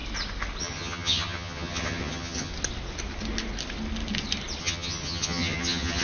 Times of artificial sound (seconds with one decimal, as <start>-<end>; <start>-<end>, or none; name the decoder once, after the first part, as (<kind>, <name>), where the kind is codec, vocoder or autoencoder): 0.6-2.5 (vocoder, HiFi-GAN); 4.6-6.0